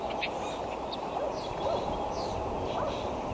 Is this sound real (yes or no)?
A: yes